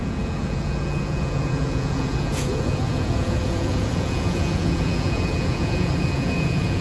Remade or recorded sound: remade